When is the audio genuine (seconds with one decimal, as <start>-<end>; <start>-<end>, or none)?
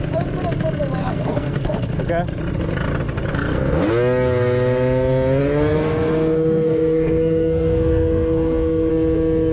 0.0-1.0; 2.0-3.3; 3.9-5.4; 8.9-9.5